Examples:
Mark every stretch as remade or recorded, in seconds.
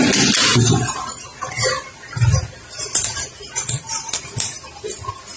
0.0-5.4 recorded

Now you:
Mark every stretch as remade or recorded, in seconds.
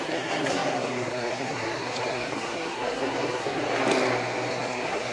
0.0-3.6 remade; 3.6-4.5 recorded; 4.5-5.1 remade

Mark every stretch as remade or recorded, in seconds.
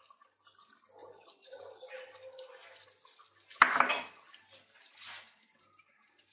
0.0-6.3 recorded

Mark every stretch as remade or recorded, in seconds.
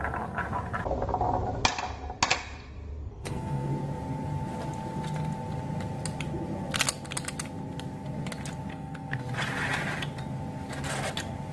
0.0-3.0 recorded; 3.0-3.7 remade; 3.7-8.7 recorded; 8.7-9.2 remade; 9.2-11.5 recorded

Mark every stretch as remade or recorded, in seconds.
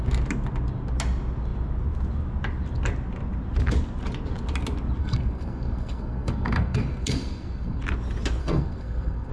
0.0-5.0 recorded; 5.0-7.8 remade; 7.8-8.4 recorded; 8.4-9.3 remade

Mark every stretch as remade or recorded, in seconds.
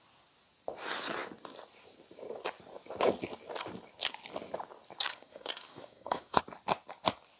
0.0-5.1 recorded; 5.1-6.4 remade; 6.4-7.4 recorded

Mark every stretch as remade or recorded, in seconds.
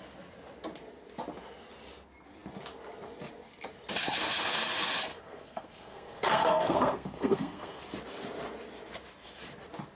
0.0-5.1 recorded; 5.1-7.8 remade; 7.8-10.0 recorded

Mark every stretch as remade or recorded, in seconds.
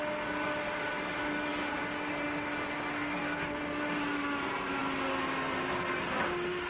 0.0-2.9 recorded; 2.9-3.6 remade; 3.6-6.7 recorded